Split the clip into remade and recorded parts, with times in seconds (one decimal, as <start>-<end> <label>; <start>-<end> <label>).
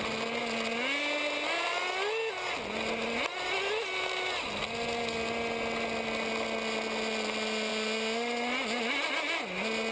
0.0-9.9 recorded